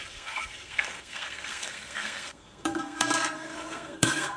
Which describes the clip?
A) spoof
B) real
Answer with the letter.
A